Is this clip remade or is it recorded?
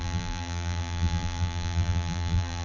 remade